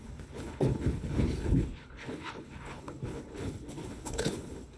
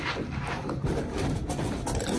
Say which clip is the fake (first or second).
first